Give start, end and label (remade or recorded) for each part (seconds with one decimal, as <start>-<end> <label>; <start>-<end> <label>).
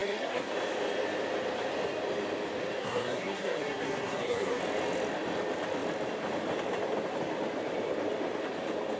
0.0-0.5 remade; 0.5-2.8 recorded; 2.8-4.6 remade; 4.6-9.0 recorded